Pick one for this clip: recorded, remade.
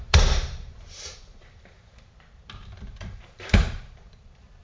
remade